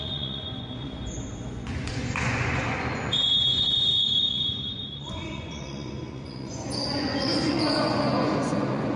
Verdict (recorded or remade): remade